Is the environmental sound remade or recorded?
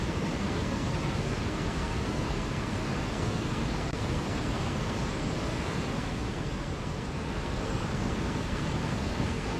remade